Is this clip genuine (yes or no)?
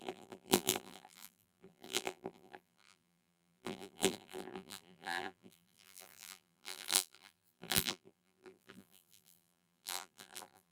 no